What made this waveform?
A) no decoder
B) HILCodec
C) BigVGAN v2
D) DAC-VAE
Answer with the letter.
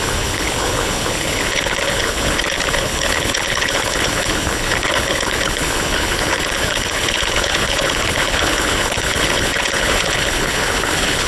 B